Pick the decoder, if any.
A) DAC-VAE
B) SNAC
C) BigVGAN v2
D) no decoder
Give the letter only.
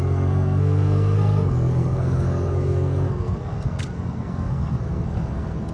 B